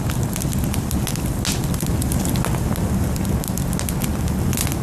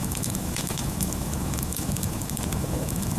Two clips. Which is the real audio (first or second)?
first